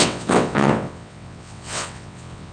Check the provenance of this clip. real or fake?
fake